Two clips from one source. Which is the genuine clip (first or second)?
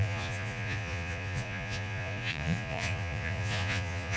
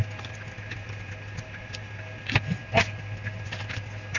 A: second